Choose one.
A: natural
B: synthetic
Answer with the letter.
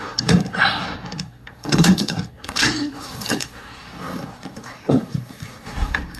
B